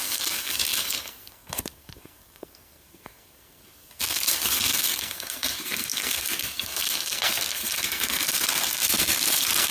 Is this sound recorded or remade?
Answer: remade